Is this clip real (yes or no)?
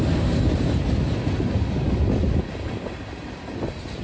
yes